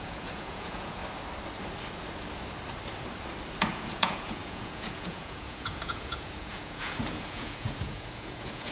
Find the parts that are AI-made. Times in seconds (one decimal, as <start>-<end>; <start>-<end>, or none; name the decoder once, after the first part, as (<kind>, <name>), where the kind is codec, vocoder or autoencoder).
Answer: 0.0-1.0 (vocoder, Vocos); 3.6-8.7

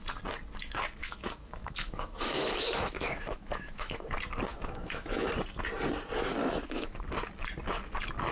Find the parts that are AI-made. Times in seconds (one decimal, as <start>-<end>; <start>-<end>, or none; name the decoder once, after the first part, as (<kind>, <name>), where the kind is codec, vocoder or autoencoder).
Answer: 1.0-4.1 (autoencoder, DAC-VAE); 4.5-5.3; 6.4-7.0

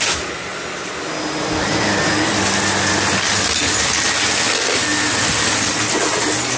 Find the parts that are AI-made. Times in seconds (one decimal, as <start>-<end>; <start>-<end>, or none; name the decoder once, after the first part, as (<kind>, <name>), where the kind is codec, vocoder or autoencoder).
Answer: none

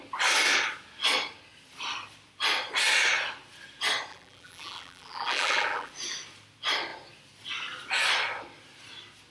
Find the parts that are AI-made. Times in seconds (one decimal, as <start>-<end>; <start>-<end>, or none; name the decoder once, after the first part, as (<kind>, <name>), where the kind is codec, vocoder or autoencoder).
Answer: 4.1-5.9 (vocoder, BigVGAN v2)